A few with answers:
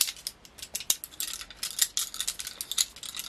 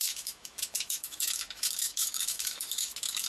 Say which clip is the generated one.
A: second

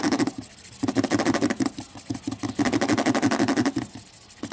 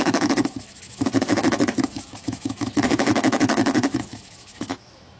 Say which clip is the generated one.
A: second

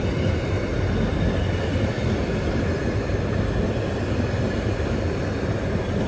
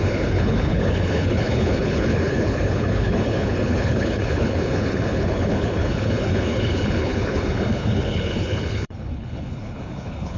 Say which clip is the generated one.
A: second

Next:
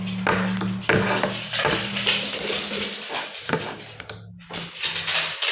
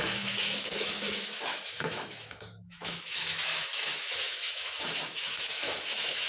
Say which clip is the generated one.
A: second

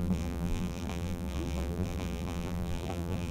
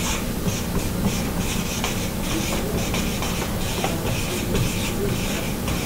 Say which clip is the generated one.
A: first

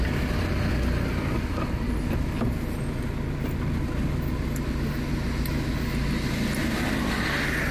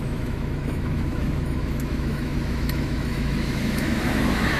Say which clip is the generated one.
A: second